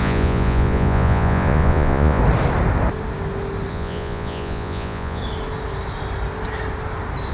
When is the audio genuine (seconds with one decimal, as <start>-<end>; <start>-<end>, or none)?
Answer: 2.2-3.7; 5.2-7.3